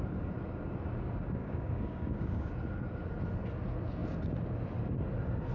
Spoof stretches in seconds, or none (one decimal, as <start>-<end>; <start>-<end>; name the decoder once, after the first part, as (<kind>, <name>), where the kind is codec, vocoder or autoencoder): 1.4-2.5 (codec, DAC)